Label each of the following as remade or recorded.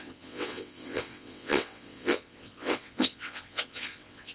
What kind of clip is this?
remade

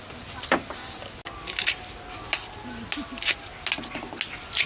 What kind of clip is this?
recorded